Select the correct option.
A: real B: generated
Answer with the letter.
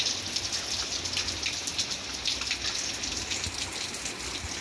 A